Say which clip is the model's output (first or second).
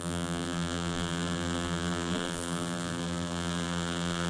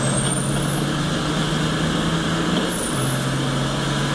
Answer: first